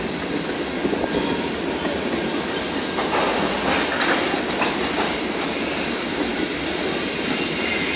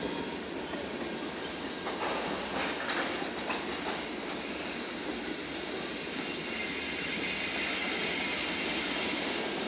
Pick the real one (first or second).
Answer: second